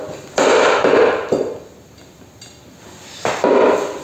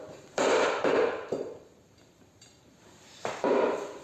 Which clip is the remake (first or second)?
second